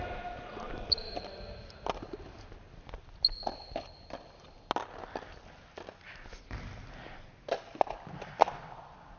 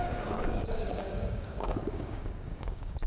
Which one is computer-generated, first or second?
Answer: second